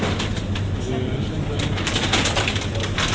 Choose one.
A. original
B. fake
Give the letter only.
A